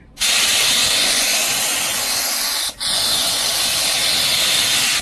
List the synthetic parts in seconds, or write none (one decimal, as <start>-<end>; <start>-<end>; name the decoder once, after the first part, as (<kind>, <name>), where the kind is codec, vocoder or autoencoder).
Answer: 0.8-3.8 (vocoder, Vocos)